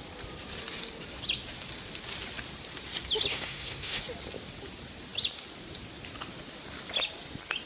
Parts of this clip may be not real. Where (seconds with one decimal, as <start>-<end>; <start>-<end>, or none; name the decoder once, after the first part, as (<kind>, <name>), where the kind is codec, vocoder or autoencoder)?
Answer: 3.3-4.0 (codec, SNAC)